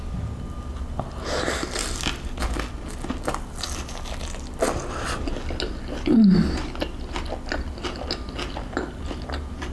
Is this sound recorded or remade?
recorded